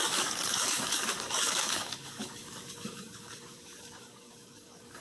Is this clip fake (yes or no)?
yes